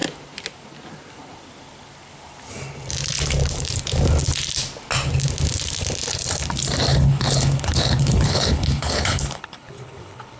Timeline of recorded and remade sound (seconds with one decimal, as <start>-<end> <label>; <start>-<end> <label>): 0.0-6.9 recorded; 6.9-10.4 remade